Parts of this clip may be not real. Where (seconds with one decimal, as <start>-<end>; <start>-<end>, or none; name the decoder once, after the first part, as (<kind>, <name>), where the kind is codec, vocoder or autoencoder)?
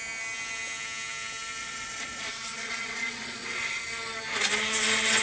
1.6-3.8 (vocoder, Vocos)